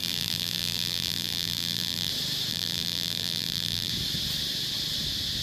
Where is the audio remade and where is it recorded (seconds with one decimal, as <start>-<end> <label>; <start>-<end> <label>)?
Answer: 0.0-2.1 remade; 2.1-2.5 recorded; 2.5-3.9 remade; 3.9-5.4 recorded